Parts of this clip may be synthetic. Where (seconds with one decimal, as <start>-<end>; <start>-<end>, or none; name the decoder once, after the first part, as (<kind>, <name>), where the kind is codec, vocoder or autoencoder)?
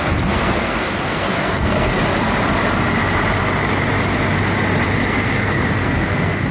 0.0-2.0 (codec, SNAC); 5.1-6.5